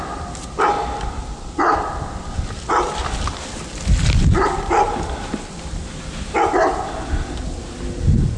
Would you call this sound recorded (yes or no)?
yes